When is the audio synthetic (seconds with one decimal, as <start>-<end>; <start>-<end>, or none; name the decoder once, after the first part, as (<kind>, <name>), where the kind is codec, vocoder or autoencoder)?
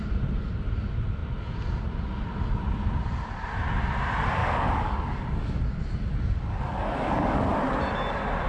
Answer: 4.4-5.6 (codec, DAC); 6.1-7.5